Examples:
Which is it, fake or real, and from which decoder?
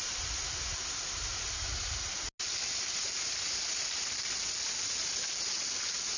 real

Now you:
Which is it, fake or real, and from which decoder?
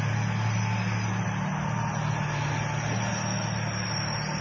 real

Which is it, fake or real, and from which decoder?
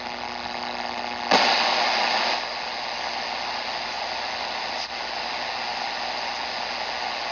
real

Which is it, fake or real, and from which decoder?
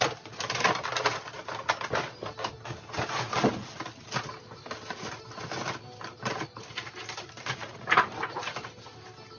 real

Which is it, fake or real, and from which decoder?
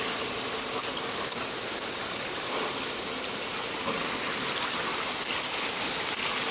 real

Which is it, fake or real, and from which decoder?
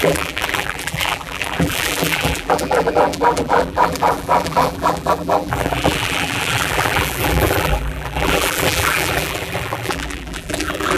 fake, vocoder, BigVGAN v2